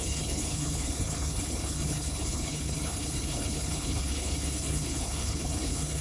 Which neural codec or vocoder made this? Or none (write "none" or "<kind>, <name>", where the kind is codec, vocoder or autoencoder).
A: codec, HILCodec